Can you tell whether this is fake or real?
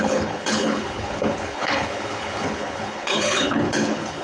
fake